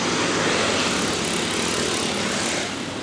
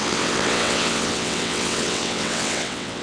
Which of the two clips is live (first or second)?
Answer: first